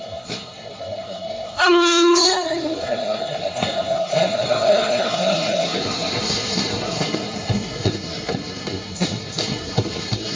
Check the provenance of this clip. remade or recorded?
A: remade